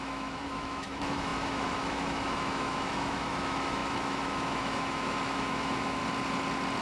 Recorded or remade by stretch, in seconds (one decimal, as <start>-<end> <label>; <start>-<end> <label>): 0.0-6.0 remade; 6.0-6.8 recorded